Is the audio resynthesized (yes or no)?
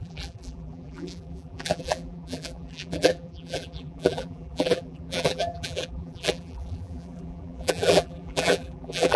yes